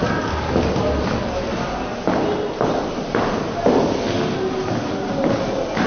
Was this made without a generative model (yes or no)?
yes